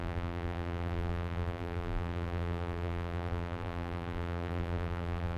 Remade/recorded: remade